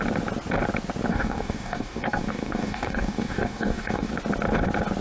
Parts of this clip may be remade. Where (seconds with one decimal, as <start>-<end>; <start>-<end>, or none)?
1.1-4.1